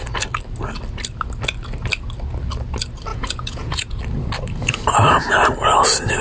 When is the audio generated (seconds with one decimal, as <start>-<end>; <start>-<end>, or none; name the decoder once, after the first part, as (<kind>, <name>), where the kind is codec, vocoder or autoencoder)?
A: 3.1-4.0 (vocoder, Vocos)